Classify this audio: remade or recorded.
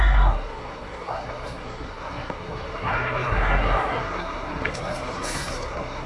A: remade